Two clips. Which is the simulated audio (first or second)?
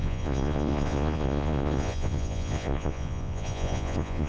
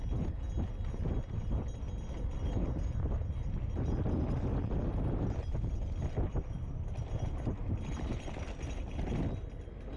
first